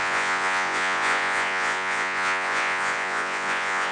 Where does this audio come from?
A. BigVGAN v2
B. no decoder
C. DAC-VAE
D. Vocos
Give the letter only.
D